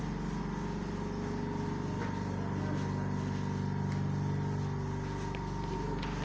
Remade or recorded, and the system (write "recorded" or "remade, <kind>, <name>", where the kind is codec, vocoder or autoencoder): recorded